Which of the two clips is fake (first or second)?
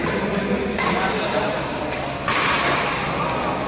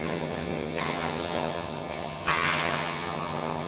second